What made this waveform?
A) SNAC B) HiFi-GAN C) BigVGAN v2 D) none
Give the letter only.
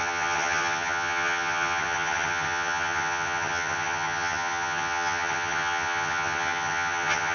B